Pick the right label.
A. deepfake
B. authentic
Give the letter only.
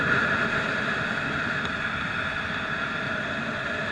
B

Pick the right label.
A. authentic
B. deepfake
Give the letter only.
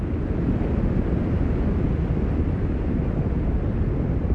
A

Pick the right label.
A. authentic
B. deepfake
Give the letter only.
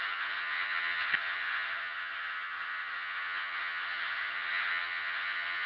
B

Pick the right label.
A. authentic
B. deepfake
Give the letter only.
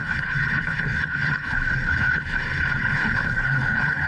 B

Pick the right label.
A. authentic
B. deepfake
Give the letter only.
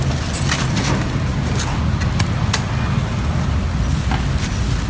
A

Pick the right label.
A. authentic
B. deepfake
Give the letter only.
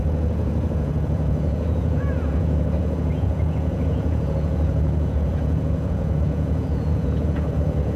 B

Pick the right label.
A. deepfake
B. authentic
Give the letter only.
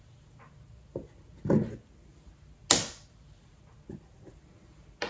B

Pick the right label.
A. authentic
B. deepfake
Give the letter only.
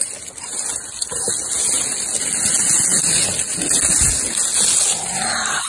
A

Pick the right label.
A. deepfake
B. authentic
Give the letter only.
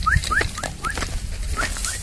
B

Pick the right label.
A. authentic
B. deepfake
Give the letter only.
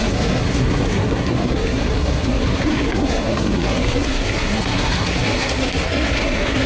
B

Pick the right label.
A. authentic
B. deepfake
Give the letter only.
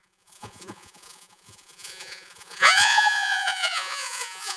B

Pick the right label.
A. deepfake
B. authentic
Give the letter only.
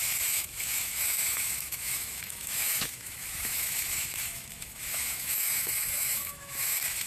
A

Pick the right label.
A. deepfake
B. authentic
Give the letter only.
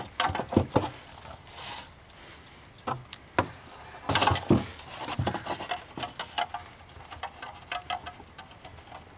B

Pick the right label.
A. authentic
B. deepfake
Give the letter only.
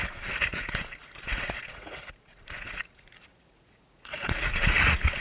B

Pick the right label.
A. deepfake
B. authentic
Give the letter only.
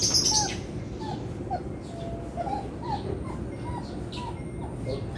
B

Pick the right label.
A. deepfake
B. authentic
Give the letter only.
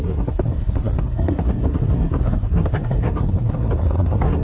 A